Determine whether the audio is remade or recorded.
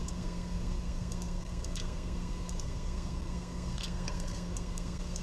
remade